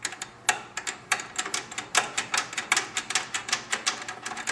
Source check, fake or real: real